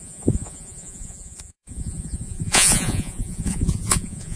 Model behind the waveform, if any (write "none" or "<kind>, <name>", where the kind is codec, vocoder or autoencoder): vocoder, Vocos